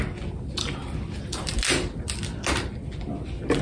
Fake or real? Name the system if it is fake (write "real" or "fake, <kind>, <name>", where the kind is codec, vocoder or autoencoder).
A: real